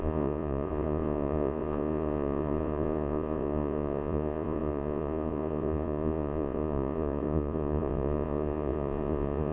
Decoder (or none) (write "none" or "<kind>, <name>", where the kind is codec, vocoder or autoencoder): vocoder, Vocos